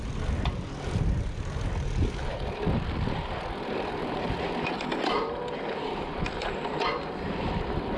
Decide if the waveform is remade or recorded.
recorded